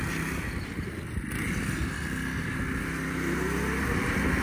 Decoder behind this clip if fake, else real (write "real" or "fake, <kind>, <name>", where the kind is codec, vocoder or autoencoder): real